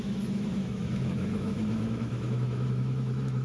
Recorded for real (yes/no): no